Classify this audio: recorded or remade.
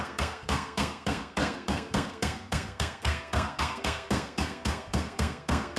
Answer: remade